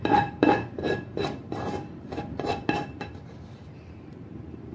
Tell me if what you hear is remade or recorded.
remade